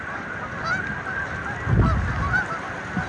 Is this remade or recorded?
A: recorded